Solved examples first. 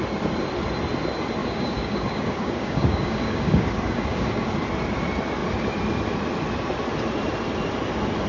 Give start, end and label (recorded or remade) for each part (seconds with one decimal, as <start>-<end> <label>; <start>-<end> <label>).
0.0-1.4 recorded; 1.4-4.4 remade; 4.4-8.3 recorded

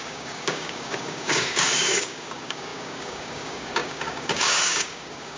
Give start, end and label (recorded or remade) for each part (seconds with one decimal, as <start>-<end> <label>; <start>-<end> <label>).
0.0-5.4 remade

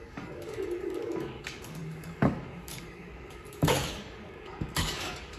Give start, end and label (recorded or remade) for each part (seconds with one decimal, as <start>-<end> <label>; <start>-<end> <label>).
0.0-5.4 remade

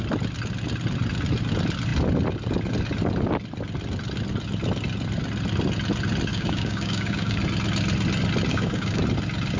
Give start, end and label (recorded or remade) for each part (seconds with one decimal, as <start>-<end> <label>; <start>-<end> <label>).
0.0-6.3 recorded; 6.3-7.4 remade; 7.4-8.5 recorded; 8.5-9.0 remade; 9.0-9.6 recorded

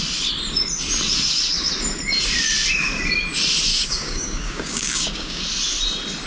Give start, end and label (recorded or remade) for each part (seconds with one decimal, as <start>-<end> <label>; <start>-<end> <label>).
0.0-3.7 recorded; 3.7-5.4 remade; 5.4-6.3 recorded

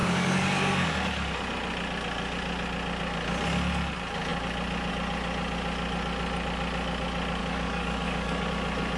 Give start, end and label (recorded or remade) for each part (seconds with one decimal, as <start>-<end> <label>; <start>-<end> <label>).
0.0-1.4 remade; 1.4-7.4 recorded; 7.4-8.5 remade; 8.5-9.0 recorded